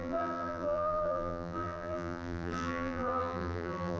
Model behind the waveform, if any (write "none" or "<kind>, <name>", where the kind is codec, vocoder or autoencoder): vocoder, BigVGAN v2